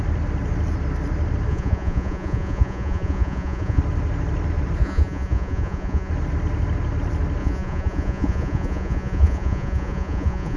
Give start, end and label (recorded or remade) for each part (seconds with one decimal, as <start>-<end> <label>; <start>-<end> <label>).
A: 0.0-1.5 recorded; 1.5-3.8 remade; 3.8-4.8 recorded; 4.8-6.1 remade; 6.1-7.4 recorded; 7.4-10.6 remade